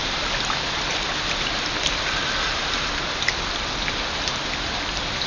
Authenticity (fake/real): real